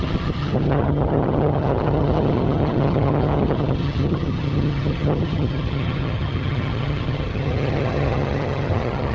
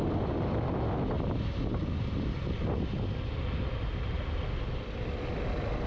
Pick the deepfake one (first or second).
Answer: first